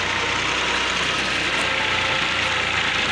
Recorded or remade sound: recorded